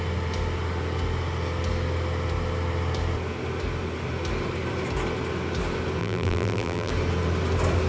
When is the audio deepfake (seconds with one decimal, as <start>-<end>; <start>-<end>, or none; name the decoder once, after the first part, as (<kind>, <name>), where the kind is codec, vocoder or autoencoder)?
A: 6.0-6.9 (vocoder, BigVGAN v2)